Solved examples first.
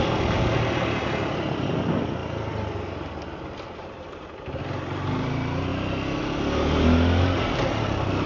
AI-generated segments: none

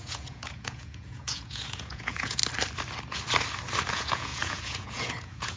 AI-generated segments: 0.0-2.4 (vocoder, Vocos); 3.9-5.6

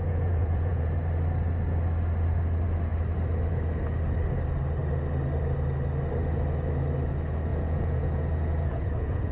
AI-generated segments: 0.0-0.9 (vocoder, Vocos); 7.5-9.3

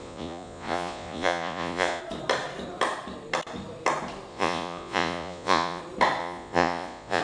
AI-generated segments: 0.0-2.0 (vocoder, Vocos); 4.3-5.8; 6.2-7.2

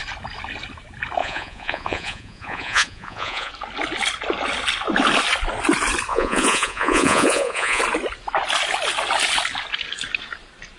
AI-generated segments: 1.2-3.5 (vocoder, Vocos); 6.1-7.8

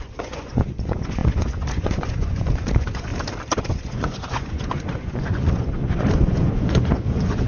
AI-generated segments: 0.0-3.1 (vocoder, Vocos); 3.7-7.5

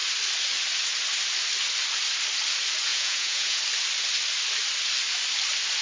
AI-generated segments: 2.9-3.6 (vocoder, Vocos)

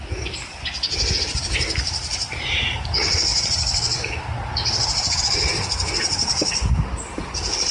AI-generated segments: none